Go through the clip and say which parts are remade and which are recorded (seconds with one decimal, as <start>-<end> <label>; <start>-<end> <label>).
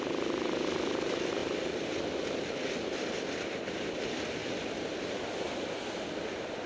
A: 0.0-6.7 remade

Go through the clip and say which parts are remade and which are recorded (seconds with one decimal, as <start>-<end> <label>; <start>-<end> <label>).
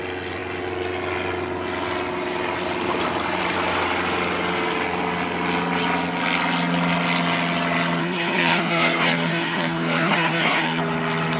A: 0.0-8.0 recorded; 8.0-10.8 remade; 10.8-11.4 recorded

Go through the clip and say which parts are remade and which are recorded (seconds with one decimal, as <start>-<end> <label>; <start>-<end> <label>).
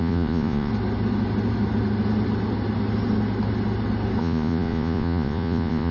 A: 0.0-0.7 remade; 0.7-4.2 recorded; 4.2-5.9 remade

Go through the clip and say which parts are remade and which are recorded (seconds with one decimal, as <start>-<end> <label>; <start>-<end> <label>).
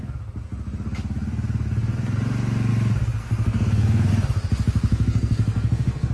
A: 0.0-3.2 recorded; 3.2-4.1 remade; 4.1-4.9 recorded; 4.9-6.1 remade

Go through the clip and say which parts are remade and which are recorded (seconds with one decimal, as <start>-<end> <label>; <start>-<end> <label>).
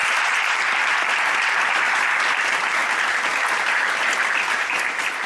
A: 0.0-5.3 recorded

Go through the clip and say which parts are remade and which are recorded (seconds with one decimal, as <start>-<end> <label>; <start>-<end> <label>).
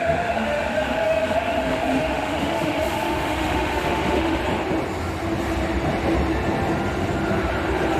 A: 0.0-4.4 remade; 4.4-8.0 recorded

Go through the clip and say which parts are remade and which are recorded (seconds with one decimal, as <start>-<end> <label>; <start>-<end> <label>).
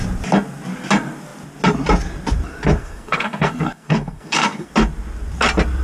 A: 0.0-2.8 recorded; 2.8-4.7 remade; 4.7-5.8 recorded